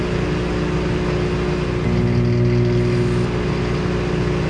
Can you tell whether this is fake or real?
real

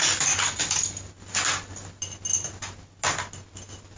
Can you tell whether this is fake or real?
real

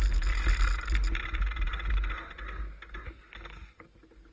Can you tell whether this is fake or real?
real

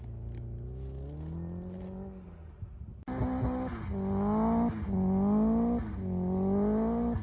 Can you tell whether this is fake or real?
real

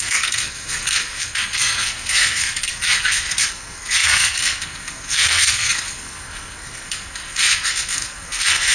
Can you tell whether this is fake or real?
fake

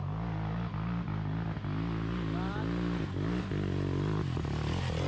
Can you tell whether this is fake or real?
real